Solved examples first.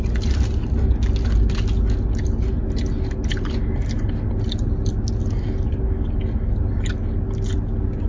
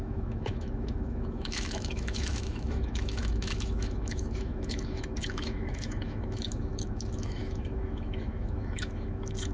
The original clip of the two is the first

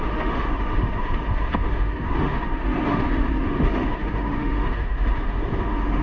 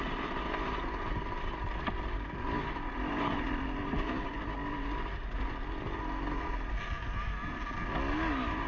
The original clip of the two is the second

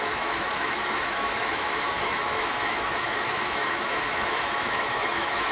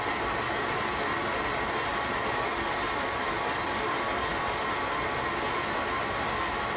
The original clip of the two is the second